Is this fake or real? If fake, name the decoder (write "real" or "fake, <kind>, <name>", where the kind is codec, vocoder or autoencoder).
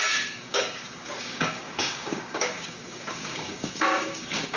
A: fake, codec, DAC